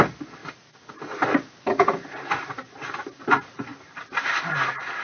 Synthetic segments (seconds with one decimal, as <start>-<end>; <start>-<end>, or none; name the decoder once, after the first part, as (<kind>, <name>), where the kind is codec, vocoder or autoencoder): none